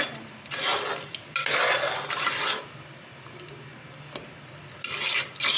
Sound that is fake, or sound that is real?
real